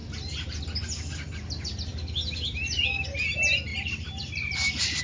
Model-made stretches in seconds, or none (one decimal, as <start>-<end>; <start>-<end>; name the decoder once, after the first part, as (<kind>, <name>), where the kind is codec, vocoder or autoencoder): 0.0-0.6 (vocoder, BigVGAN v2); 3.7-5.0